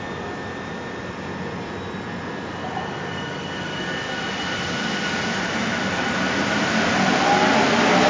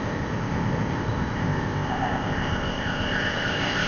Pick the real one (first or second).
first